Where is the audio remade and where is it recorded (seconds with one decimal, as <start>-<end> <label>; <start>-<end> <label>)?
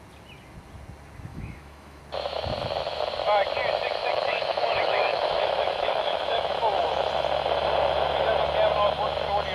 0.0-1.3 recorded; 1.3-2.0 remade; 2.0-4.0 recorded; 4.0-7.1 remade; 7.1-9.5 recorded